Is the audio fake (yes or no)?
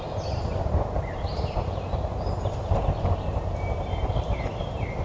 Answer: yes